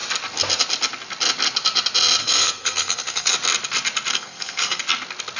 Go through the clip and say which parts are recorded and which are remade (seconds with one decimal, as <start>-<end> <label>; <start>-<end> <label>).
0.0-2.2 recorded; 2.2-3.3 remade; 3.3-4.1 recorded; 4.1-4.8 remade; 4.8-5.4 recorded